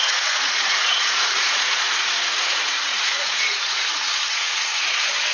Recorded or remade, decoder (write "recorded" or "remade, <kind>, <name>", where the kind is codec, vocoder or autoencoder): remade, vocoder, Vocos